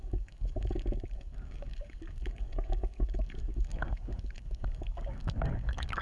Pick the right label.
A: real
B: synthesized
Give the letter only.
B